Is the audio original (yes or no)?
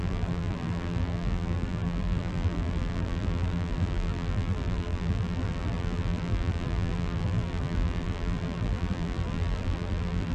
no